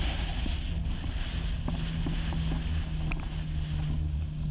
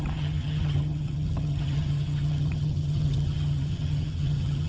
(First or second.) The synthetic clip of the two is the second